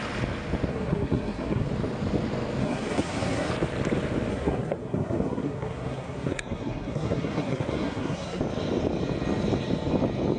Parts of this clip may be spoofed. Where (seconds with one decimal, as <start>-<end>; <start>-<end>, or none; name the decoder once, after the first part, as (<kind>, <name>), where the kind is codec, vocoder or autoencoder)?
0.7-1.7 (codec, SNAC); 2.6-3.5; 4.3-8.4